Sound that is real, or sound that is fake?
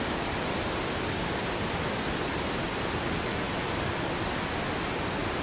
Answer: real